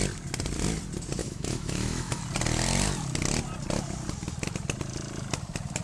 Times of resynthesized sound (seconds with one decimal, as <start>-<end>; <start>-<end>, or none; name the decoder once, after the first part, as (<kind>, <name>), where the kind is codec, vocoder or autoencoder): 1.2-2.2 (autoencoder, DAC-VAE)